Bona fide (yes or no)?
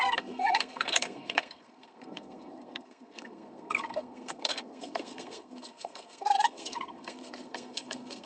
no